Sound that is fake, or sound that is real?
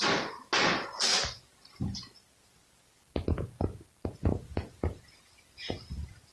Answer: real